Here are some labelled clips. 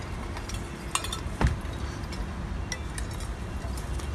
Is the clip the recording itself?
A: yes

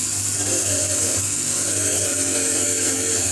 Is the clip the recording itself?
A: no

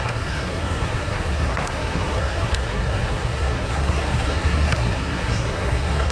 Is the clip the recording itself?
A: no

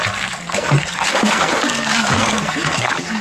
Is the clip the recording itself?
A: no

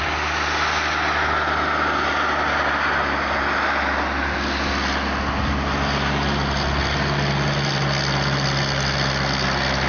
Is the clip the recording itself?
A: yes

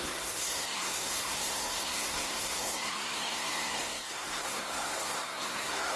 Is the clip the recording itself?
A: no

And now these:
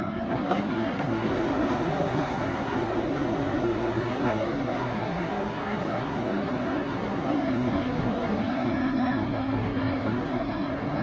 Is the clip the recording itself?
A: no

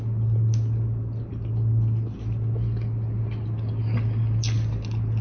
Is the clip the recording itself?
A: yes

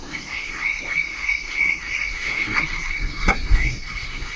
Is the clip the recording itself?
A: no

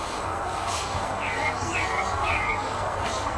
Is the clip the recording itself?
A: no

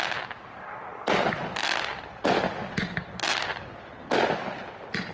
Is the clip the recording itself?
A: yes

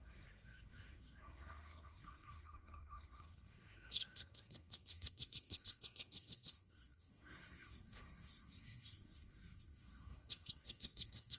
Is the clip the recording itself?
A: no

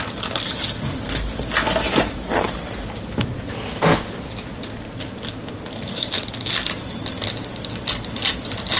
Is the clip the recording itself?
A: yes